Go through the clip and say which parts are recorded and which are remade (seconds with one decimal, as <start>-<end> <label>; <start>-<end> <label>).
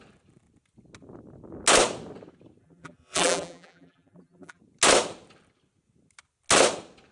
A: 0.0-2.6 recorded; 2.6-4.6 remade; 4.6-7.1 recorded